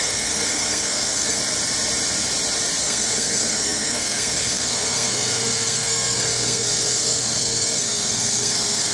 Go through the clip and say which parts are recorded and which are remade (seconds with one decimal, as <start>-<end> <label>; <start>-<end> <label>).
0.0-1.4 remade; 1.4-2.8 recorded; 2.8-8.9 remade